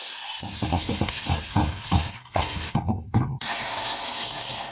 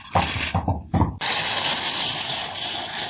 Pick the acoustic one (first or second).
second